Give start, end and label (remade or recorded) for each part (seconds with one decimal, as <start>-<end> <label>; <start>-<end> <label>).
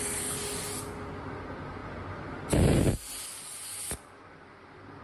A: 0.0-5.0 recorded